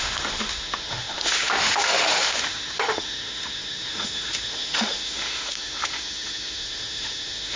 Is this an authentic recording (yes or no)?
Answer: no